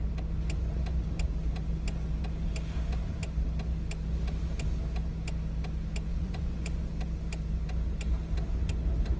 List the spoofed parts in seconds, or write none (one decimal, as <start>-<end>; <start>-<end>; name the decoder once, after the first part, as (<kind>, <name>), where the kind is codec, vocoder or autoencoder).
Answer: 6.1-6.8 (vocoder, Vocos)